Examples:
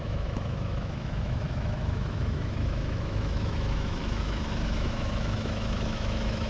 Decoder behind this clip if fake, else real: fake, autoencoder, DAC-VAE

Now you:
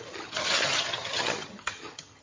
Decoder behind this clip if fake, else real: fake, vocoder, HiFi-GAN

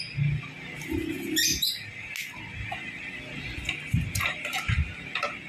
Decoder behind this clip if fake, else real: real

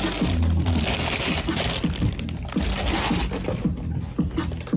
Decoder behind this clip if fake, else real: real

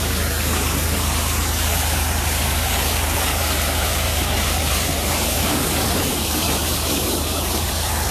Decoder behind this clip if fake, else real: fake, codec, DAC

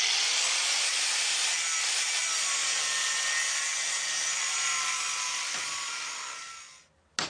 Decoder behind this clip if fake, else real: real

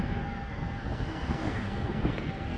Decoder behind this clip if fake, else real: fake, codec, SNAC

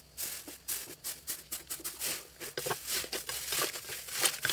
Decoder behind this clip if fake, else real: real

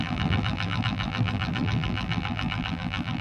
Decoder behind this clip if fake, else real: fake, vocoder, BigVGAN v2